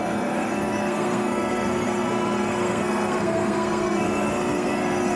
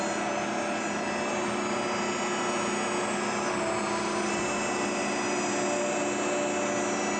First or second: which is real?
second